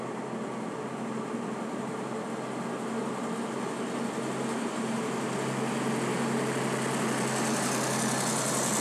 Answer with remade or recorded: recorded